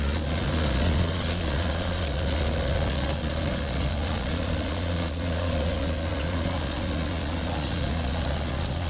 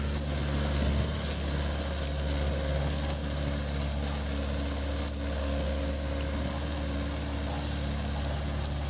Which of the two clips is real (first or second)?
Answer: second